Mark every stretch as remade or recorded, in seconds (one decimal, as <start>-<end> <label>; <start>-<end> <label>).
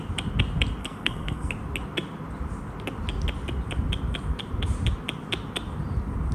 0.0-0.8 recorded; 0.8-1.5 remade; 1.5-6.3 recorded